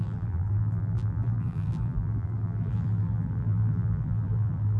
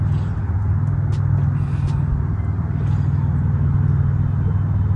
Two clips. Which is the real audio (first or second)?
second